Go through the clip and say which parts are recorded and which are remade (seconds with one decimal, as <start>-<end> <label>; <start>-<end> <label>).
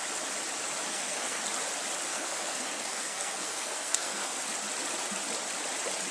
0.0-0.9 recorded; 0.9-1.4 remade; 1.4-2.1 recorded; 2.1-4.4 remade; 4.4-6.1 recorded